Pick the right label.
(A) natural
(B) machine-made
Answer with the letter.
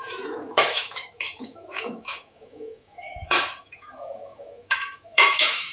B